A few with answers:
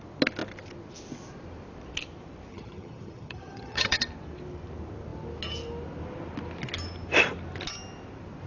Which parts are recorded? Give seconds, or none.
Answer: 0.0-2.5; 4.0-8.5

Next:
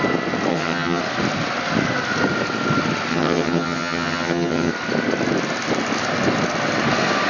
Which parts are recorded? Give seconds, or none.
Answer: 0.0-0.5; 1.0-3.1; 4.7-7.3

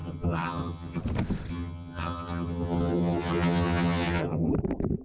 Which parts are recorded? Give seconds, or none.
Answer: 1.0-1.5; 4.5-5.0